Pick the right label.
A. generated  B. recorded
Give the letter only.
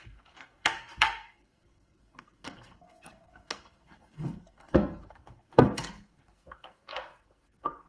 A